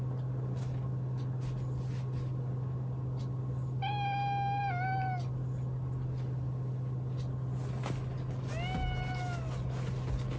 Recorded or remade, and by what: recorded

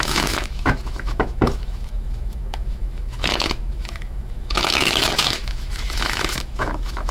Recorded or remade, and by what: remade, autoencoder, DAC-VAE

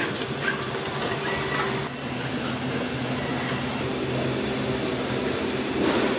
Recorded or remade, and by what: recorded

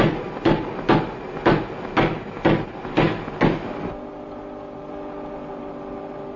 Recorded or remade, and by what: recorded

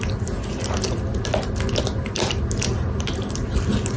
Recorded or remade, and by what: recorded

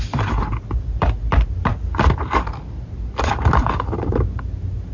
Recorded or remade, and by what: recorded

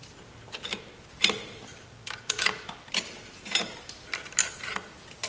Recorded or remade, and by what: remade, vocoder, BigVGAN v2